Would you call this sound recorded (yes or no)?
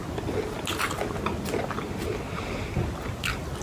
yes